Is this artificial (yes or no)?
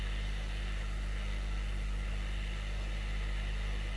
no